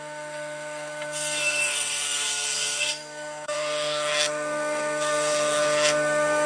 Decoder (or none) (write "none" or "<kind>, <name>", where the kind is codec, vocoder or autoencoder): codec, SNAC